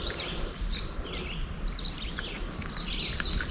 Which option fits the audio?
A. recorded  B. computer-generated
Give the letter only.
A